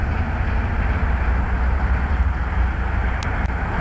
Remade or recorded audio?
recorded